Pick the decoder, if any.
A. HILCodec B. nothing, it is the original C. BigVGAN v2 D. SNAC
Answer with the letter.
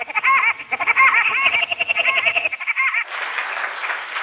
B